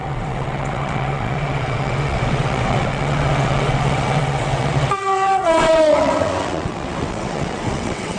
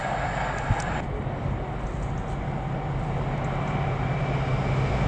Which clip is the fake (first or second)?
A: first